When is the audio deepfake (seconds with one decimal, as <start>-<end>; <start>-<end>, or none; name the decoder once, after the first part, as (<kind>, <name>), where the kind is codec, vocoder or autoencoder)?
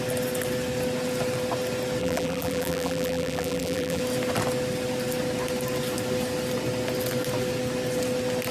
2.0-4.0 (vocoder, BigVGAN v2)